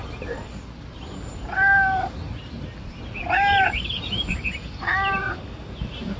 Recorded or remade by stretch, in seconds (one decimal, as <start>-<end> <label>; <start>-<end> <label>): 0.0-6.2 recorded